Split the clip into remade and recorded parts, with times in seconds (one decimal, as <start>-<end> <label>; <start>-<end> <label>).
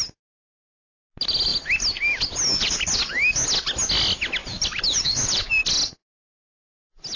0.0-4.4 recorded; 4.4-5.5 remade; 5.5-7.2 recorded